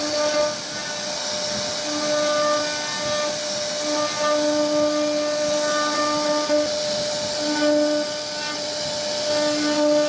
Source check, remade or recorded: recorded